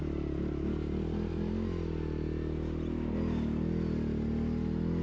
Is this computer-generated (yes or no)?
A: no